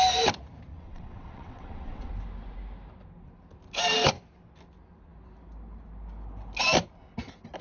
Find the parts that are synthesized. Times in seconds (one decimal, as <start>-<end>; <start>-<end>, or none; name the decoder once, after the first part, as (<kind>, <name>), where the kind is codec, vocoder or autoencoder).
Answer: 0.7-2.1 (vocoder, WaveNeXt)

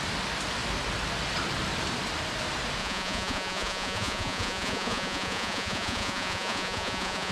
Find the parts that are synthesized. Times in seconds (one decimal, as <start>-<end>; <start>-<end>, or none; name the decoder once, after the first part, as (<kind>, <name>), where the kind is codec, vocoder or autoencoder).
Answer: 2.8-7.3 (vocoder, Vocos)

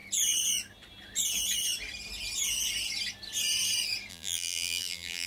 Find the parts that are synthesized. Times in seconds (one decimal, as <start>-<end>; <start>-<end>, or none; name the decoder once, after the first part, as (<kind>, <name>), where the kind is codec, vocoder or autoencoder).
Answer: 4.1-5.3 (vocoder, BigVGAN v2)

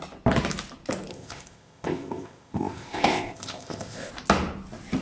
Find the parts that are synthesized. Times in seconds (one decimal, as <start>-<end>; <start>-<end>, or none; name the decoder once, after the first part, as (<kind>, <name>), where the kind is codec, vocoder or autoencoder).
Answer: 1.1-4.1 (codec, ZipCodec)

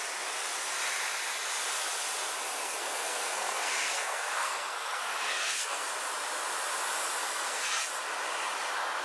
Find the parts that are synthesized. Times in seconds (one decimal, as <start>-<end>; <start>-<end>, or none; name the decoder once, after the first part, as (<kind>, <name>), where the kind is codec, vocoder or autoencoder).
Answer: 2.6-5.9 (codec, SNAC); 7.2-7.8

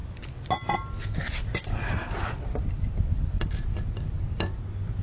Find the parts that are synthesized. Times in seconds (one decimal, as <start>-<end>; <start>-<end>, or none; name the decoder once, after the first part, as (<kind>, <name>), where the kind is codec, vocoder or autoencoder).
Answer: none

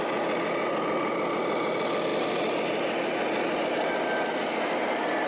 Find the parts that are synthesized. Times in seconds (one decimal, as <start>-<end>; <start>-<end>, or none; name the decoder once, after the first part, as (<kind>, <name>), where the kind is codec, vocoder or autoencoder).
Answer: none

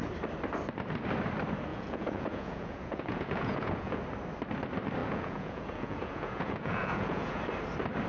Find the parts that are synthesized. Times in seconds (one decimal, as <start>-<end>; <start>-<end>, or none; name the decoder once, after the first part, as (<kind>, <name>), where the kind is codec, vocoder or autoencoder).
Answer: 1.7-4.0 (vocoder, Vocos); 5.0-7.4